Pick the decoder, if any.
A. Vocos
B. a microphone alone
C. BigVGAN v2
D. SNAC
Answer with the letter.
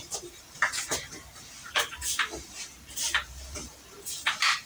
C